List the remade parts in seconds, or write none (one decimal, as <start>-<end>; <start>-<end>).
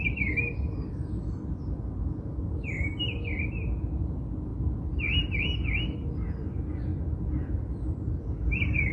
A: none